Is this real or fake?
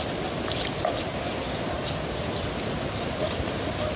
real